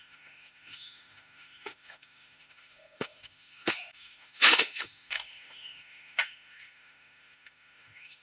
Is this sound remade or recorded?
remade